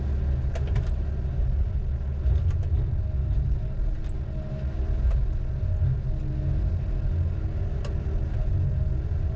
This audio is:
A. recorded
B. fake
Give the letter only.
A